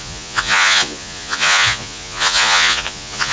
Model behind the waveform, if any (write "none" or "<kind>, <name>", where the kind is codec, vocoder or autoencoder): vocoder, Vocos